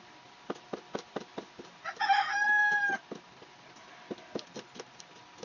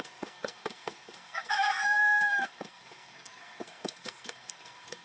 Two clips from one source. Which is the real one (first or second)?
first